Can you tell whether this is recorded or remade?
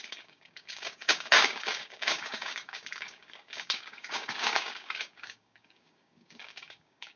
remade